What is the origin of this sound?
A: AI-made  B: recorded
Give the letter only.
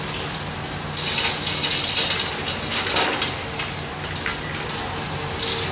B